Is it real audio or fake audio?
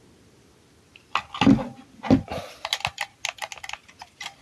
real